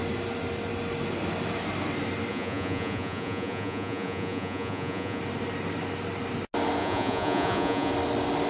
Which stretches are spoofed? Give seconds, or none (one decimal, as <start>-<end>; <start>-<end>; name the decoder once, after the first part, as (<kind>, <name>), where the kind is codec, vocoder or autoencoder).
2.3-5.2 (vocoder, Vocos); 6.8-7.9